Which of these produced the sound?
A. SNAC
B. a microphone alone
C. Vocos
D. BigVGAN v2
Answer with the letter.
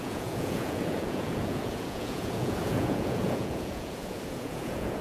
C